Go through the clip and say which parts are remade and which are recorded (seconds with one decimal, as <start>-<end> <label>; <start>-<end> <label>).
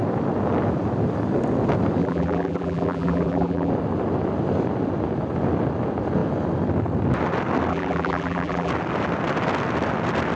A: 0.0-2.0 recorded; 2.0-3.7 remade; 3.7-7.7 recorded; 7.7-8.7 remade; 8.7-10.4 recorded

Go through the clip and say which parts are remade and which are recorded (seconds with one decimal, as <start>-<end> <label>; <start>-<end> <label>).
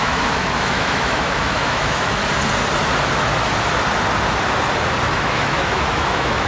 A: 0.0-2.2 remade; 2.2-5.1 recorded; 5.1-6.5 remade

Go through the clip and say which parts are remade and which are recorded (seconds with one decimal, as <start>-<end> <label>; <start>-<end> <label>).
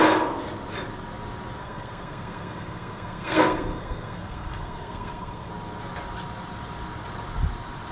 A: 0.0-1.6 recorded; 1.6-5.5 remade; 5.5-7.9 recorded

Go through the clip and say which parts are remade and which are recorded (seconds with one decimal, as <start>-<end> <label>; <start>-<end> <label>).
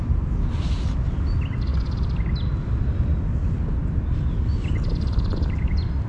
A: 0.0-6.1 recorded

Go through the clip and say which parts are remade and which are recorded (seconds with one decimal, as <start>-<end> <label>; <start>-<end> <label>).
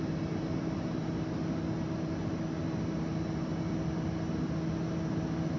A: 0.0-5.6 recorded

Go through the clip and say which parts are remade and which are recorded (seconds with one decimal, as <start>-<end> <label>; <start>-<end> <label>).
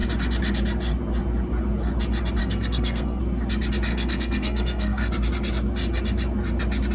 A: 0.0-2.4 recorded; 2.4-3.2 remade; 3.2-3.9 recorded; 3.9-5.1 remade; 5.1-6.9 recorded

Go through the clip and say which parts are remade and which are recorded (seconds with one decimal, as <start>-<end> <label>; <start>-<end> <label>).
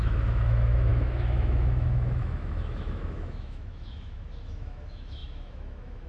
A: 0.0-6.1 remade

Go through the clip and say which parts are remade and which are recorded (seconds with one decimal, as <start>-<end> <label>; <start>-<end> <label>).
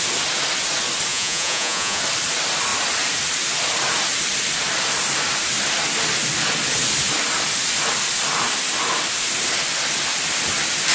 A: 0.0-1.1 recorded; 1.1-2.0 remade; 2.0-10.9 recorded